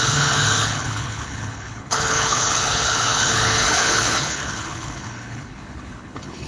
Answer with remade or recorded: remade